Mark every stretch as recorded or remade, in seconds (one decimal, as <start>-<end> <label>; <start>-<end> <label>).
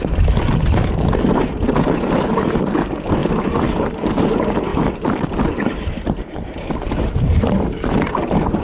0.0-4.7 recorded; 4.7-8.6 remade